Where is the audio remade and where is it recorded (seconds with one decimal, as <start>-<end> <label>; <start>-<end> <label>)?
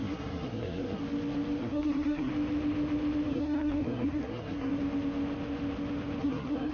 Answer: 0.0-1.0 remade; 1.0-1.6 recorded; 1.6-2.3 remade; 2.3-3.3 recorded; 3.3-4.7 remade; 4.7-6.2 recorded; 6.2-6.7 remade